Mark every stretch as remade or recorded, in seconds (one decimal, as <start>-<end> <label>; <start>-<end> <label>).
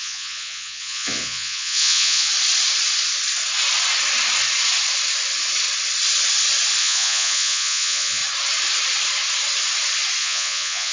0.0-2.3 remade; 2.3-6.8 recorded; 6.8-8.2 remade; 8.2-10.2 recorded; 10.2-10.9 remade